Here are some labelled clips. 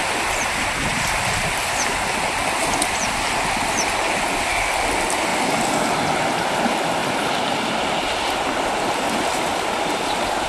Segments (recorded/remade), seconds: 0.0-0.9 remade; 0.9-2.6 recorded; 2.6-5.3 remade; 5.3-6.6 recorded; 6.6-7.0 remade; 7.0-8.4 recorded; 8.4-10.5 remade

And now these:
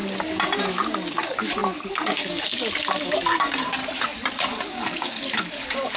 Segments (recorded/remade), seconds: 0.0-1.1 recorded; 1.1-3.8 remade; 3.8-4.3 recorded; 4.3-6.0 remade

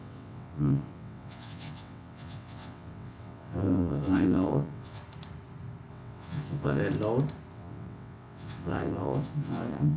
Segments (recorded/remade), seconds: 0.0-5.0 remade; 5.0-5.9 recorded; 5.9-6.8 remade; 6.8-7.5 recorded; 7.5-10.0 remade

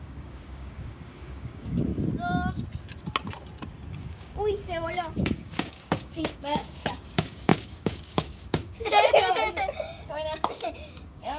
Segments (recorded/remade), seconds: 0.0-1.9 remade; 1.9-4.0 recorded; 4.0-11.4 remade

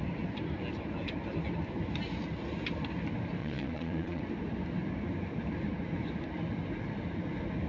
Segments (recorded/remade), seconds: 0.0-3.4 recorded; 3.4-4.2 remade; 4.2-7.7 recorded

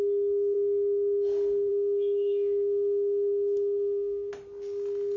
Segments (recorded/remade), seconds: 0.0-1.7 recorded; 1.7-4.3 remade; 4.3-5.2 recorded

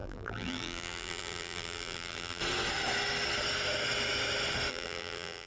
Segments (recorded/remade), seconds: 0.0-2.4 remade; 2.4-4.7 recorded; 4.7-5.5 remade